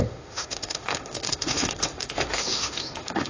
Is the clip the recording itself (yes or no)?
no